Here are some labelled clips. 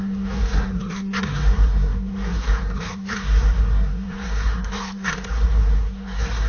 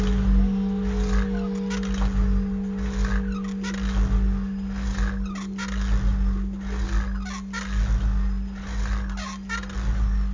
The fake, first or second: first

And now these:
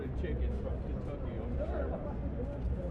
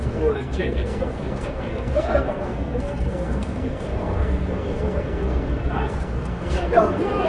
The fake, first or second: second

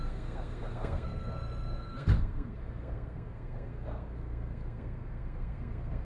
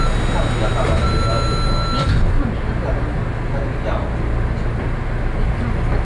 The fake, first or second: first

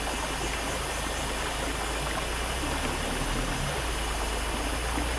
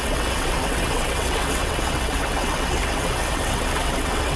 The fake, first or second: second